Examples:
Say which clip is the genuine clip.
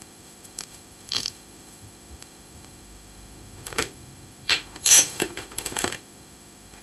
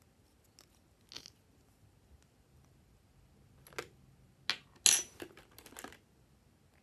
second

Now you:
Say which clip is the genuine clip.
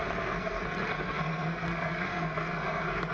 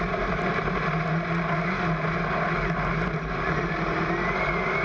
second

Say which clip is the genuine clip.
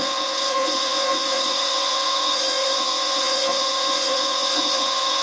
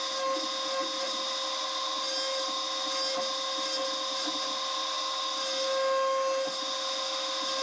second